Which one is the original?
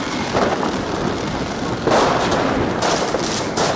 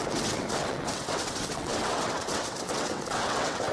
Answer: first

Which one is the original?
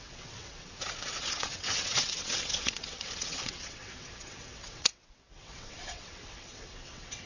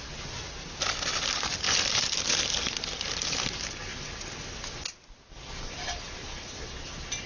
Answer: second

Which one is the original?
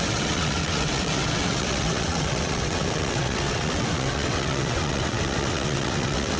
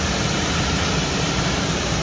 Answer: second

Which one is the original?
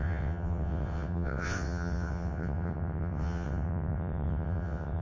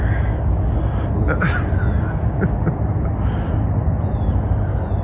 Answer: second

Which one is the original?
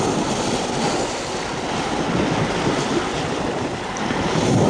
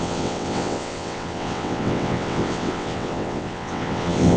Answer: first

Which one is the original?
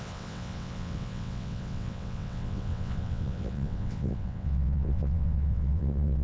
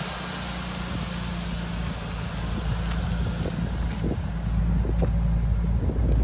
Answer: second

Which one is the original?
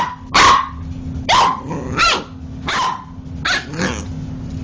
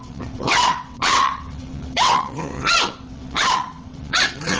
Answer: first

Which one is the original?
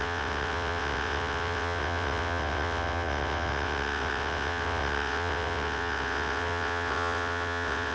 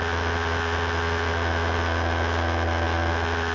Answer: second